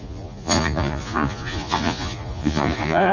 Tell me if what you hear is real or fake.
fake